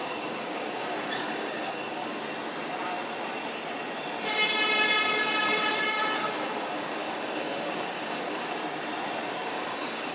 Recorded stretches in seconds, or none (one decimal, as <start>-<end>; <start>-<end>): 2.1-5.7; 8.6-9.5